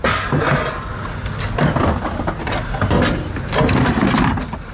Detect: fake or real real